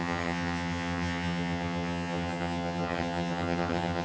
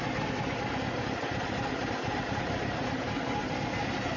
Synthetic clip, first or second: first